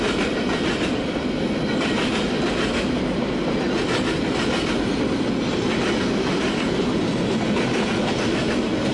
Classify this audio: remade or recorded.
recorded